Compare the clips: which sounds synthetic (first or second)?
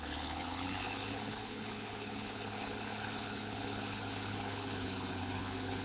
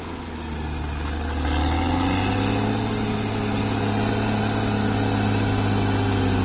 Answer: first